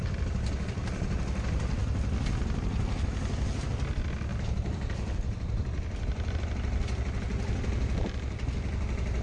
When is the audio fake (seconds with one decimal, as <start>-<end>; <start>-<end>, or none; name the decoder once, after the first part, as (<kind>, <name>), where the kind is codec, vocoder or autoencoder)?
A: 4.3-6.3 (vocoder, BigVGAN v2)